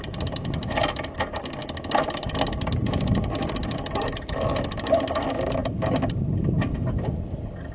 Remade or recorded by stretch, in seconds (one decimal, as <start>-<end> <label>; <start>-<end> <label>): 0.0-7.7 recorded